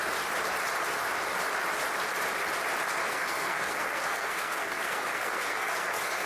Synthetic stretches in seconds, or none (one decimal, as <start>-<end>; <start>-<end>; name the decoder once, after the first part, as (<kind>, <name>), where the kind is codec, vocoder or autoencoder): 3.0-6.3 (codec, SNAC)